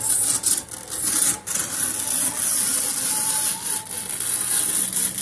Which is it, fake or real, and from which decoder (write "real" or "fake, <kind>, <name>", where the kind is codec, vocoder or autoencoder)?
real